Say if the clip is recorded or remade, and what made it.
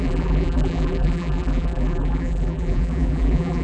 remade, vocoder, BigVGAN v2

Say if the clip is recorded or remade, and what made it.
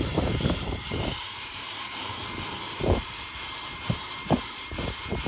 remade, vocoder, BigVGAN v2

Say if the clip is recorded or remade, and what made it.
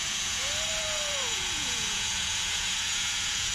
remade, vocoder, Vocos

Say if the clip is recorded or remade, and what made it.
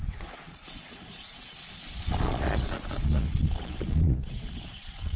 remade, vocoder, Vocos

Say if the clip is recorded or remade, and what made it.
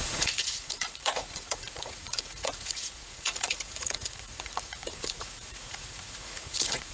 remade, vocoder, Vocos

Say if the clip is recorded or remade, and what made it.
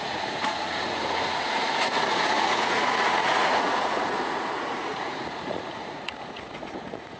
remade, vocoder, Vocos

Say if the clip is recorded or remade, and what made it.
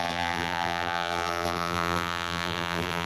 remade, vocoder, BigVGAN v2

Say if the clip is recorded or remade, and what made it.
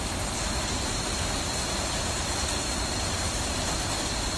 remade, vocoder, BigVGAN v2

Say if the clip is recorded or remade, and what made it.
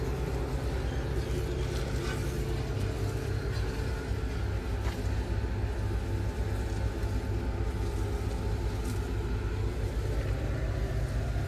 recorded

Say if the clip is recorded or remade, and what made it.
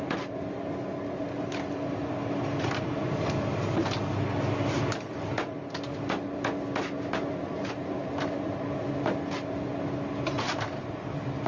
recorded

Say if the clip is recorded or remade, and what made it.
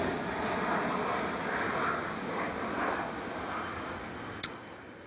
recorded